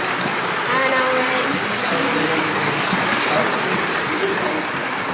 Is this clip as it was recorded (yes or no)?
yes